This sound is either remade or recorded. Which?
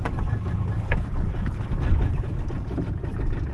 recorded